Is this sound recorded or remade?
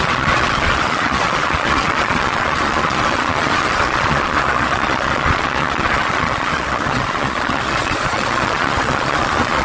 remade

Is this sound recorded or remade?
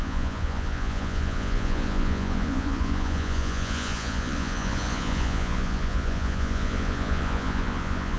remade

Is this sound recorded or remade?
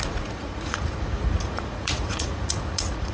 remade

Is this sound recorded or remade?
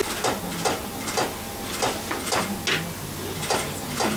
recorded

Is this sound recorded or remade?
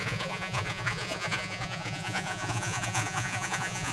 remade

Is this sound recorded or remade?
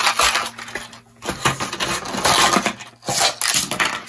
recorded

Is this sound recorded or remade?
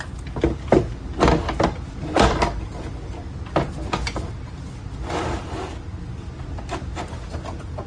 recorded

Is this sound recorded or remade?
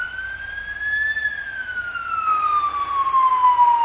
recorded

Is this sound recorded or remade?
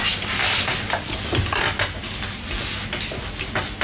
recorded